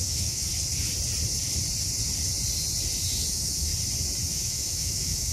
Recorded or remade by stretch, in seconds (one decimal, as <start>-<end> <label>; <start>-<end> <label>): 0.0-0.5 remade; 0.5-3.3 recorded; 3.3-3.7 remade; 3.7-4.3 recorded; 4.3-5.3 remade